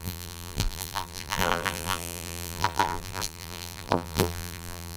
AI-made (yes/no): yes